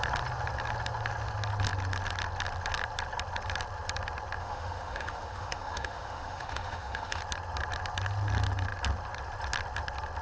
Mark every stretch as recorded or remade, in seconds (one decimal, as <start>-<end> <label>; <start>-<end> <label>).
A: 0.0-4.4 recorded; 4.4-7.2 remade; 7.2-10.2 recorded